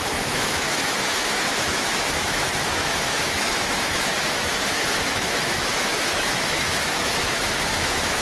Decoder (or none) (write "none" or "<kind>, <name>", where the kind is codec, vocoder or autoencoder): autoencoder, DAC-VAE